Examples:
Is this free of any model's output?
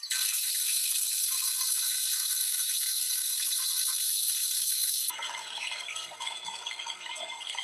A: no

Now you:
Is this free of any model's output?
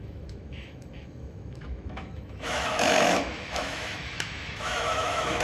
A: no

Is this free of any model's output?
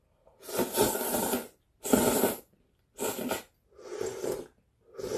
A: yes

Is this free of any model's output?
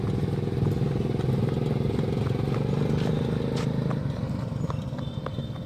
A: yes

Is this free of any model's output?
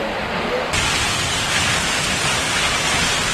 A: yes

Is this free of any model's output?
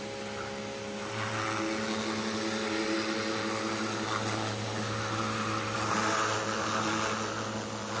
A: yes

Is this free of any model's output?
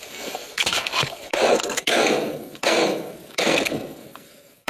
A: no